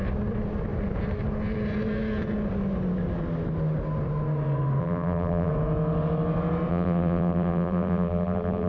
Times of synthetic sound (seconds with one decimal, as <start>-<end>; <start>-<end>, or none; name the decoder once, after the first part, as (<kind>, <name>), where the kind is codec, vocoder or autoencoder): 4.8-5.5 (vocoder, BigVGAN v2); 6.7-8.7